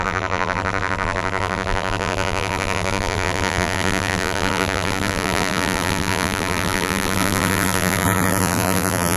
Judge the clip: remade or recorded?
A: remade